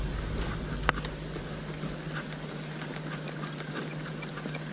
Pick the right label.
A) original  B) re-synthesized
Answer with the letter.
A